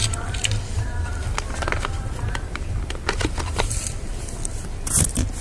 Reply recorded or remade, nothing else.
remade